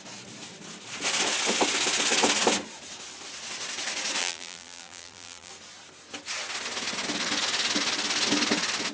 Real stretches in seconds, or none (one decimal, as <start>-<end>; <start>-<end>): 0.0-4.2; 5.5-8.9